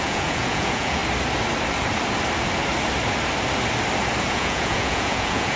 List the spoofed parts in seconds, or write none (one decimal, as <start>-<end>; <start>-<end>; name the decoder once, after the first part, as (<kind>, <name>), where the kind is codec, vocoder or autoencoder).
0.0-1.0 (vocoder, Vocos); 4.3-5.6